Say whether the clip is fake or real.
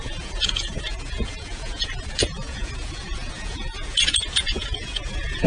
fake